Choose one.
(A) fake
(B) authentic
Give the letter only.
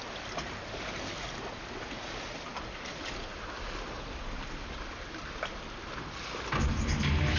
B